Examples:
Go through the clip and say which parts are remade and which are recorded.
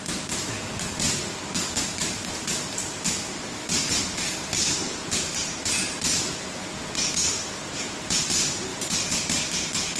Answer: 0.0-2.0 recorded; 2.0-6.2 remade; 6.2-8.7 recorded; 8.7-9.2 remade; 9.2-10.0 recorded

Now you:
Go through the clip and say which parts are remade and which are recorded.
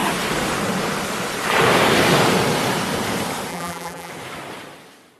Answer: 0.0-3.5 recorded; 3.5-4.1 remade; 4.1-5.2 recorded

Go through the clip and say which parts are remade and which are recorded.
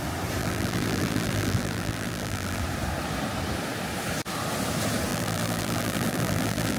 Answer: 0.0-0.4 recorded; 0.4-2.6 remade; 2.6-5.1 recorded; 5.1-6.8 remade